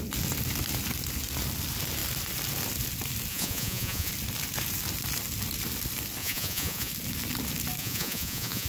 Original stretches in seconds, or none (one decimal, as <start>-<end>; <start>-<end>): 0.0-3.3; 4.1-6.2; 6.9-7.8